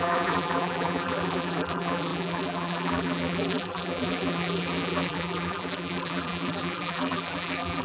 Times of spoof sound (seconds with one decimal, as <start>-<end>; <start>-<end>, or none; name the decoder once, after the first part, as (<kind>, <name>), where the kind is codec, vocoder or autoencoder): 0.0-7.8 (vocoder, BigVGAN v2)